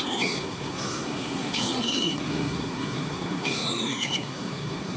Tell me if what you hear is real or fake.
fake